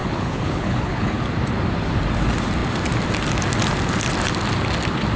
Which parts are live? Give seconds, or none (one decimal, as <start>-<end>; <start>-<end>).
1.2-5.2